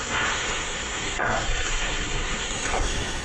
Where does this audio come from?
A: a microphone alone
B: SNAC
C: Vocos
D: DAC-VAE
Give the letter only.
B